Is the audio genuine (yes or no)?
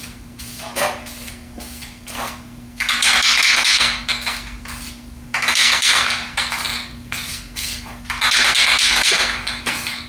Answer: no